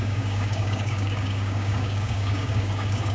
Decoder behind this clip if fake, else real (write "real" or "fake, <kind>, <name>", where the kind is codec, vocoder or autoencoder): fake, codec, DAC